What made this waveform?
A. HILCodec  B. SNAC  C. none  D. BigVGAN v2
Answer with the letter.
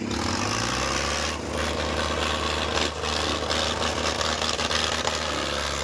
C